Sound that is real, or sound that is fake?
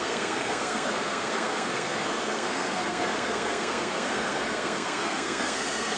fake